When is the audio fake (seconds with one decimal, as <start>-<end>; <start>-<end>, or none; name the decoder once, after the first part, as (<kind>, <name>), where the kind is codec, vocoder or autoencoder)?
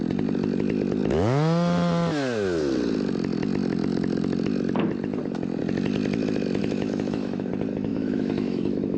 6.6-7.5 (autoencoder, DAC-VAE); 7.9-9.0